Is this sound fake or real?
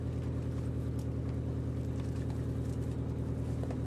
real